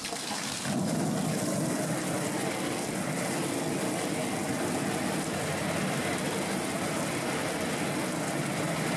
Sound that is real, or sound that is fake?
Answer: real